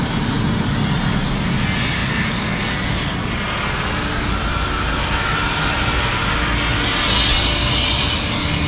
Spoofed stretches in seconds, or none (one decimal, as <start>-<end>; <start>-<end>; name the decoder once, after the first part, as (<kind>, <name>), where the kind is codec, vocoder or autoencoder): none